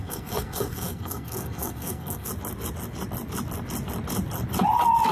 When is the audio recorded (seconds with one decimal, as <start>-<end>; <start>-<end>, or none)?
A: 2.3-5.1